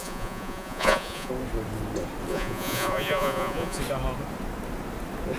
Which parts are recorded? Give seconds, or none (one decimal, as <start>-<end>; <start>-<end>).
1.3-2.3; 3.8-5.4